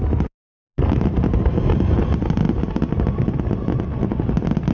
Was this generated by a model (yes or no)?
no